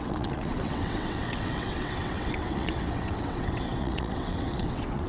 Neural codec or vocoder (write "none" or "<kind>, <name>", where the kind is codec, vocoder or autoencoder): vocoder, WaveNeXt